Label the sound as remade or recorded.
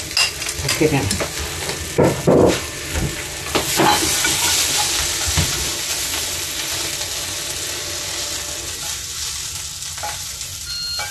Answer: recorded